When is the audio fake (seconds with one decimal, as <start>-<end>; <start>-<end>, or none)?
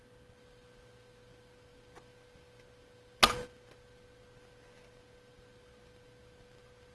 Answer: none